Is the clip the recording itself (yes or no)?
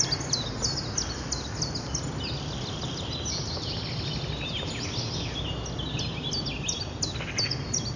yes